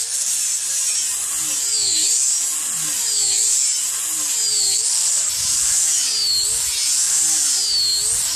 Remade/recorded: recorded